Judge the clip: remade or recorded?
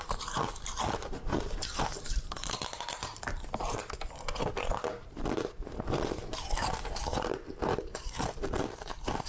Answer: remade